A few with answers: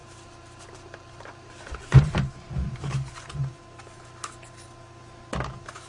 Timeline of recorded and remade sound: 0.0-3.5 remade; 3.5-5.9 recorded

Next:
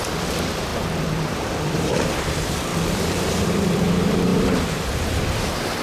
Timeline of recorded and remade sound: 0.0-5.8 remade

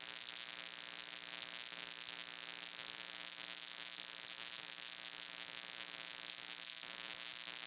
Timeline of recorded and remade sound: 0.0-2.7 recorded; 2.7-7.3 remade; 7.3-7.7 recorded

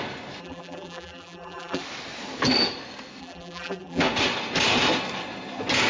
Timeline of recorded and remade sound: 0.0-0.4 recorded; 0.4-1.8 remade; 1.8-3.2 recorded; 3.2-4.0 remade; 4.0-5.9 recorded

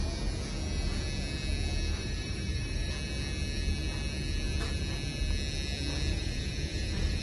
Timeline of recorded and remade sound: 0.0-1.9 recorded; 1.9-2.9 remade; 2.9-6.1 recorded; 6.1-7.2 remade